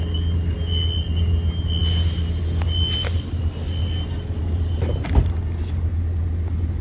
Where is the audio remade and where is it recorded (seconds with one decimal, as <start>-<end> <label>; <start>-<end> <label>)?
0.0-6.8 recorded